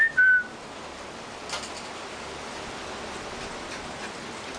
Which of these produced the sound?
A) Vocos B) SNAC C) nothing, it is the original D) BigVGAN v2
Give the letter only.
C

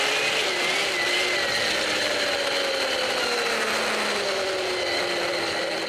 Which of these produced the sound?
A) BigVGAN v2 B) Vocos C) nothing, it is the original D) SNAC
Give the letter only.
C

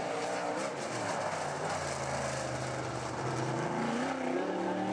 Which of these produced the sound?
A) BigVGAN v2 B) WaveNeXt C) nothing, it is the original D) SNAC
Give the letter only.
C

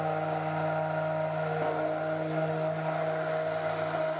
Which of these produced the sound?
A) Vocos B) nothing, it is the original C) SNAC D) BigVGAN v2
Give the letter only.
B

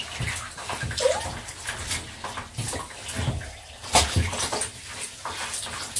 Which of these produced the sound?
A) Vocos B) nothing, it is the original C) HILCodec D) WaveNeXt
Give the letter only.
B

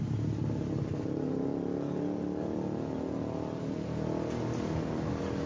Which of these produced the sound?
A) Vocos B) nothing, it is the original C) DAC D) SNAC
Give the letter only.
B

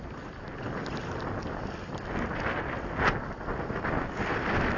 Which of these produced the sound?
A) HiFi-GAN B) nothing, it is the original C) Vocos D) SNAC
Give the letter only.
B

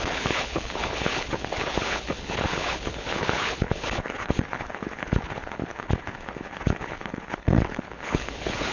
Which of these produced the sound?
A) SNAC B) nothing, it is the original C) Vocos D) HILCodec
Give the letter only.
D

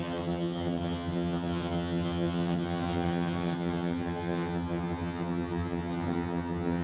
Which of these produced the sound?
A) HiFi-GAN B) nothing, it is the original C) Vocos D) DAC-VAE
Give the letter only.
A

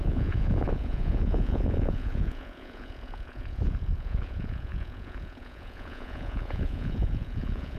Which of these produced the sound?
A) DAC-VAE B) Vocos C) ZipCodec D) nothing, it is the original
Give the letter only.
B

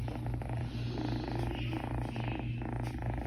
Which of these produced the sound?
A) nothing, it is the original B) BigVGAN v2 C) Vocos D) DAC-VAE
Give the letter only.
A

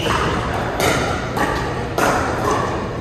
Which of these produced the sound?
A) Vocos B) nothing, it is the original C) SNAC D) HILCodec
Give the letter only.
B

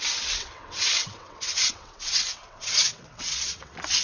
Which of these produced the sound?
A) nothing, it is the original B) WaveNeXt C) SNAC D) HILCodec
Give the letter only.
B